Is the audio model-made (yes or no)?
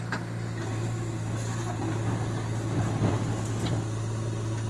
no